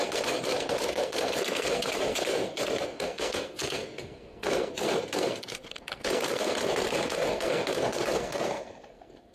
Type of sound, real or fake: fake